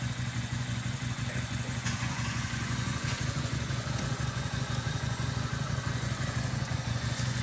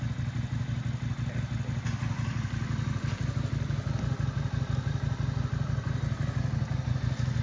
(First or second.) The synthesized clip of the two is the first